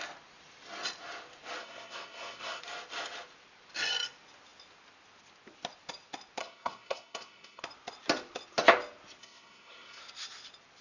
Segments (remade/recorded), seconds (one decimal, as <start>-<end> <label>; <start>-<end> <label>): 0.0-1.6 recorded; 1.6-2.6 remade; 2.6-6.4 recorded; 6.4-7.6 remade; 7.6-9.2 recorded; 9.2-10.0 remade; 10.0-10.8 recorded